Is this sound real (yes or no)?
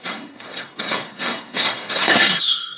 no